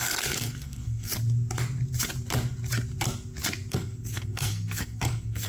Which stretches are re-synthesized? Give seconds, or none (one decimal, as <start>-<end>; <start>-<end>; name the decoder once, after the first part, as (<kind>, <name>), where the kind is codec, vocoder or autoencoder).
0.0-1.1 (codec, SNAC); 3.7-5.5